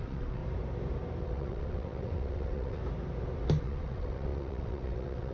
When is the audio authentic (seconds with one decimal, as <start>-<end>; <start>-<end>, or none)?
0.4-1.2; 2.8-3.6